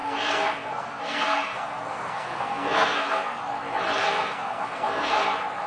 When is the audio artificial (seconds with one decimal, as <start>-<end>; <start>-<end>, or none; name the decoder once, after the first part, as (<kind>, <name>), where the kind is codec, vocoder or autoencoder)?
0.0-3.4 (codec, SNAC); 4.0-5.2